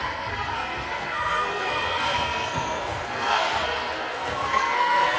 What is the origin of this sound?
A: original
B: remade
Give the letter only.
B